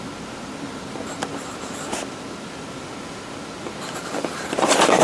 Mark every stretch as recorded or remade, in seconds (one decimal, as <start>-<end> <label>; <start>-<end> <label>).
0.0-2.8 recorded; 2.8-4.5 remade; 4.5-5.0 recorded